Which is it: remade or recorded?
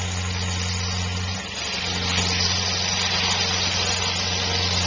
recorded